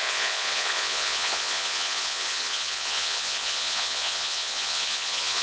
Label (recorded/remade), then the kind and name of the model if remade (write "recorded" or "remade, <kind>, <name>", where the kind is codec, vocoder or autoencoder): remade, vocoder, Vocos